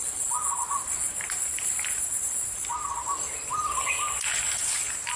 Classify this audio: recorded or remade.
recorded